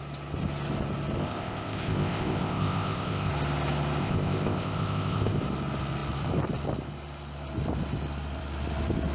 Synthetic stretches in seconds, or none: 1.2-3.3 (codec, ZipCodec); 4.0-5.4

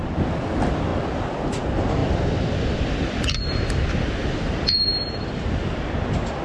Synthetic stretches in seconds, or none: 2.0-3.2 (vocoder, BigVGAN v2)

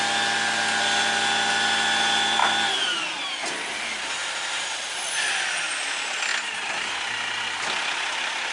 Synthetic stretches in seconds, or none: none

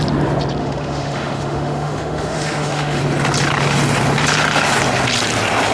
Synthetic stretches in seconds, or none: 0.6-3.0 (autoencoder, DAC-VAE)

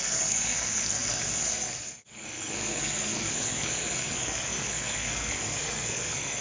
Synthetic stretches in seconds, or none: 0.0-6.4 (codec, SNAC)